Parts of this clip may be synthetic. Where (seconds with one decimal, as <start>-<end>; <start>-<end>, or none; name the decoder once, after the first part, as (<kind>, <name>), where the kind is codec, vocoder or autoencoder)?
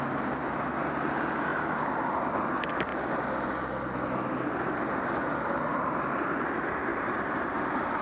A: 1.5-2.5 (vocoder, BigVGAN v2); 5.7-6.3; 6.9-7.6